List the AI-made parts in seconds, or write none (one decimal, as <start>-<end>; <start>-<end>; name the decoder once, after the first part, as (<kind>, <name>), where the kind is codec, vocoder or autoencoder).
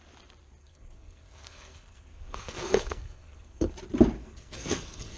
0.6-3.7 (codec, SNAC); 4.2-5.2